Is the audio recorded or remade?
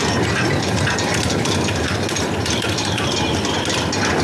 recorded